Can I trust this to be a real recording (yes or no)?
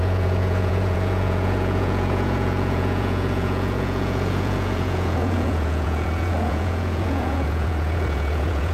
no